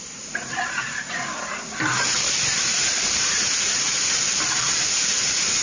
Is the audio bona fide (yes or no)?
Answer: no